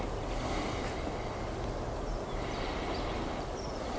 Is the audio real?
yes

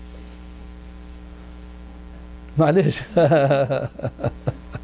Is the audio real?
yes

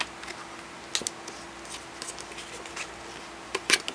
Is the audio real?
yes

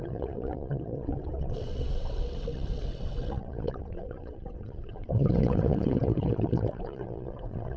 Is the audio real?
no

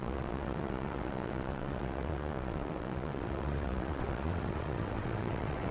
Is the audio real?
no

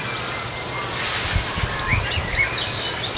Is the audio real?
yes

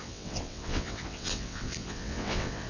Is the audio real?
no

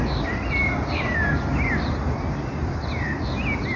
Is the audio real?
yes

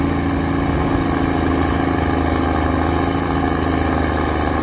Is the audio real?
yes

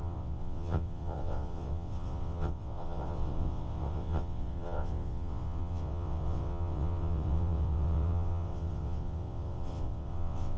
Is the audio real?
no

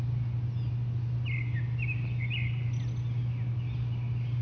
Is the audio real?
yes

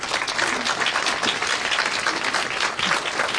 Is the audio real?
yes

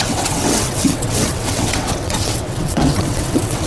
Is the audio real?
no